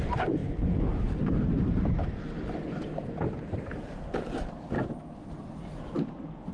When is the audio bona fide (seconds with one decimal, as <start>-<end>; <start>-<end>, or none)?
0.4-1.0; 2.0-3.5; 4.8-5.3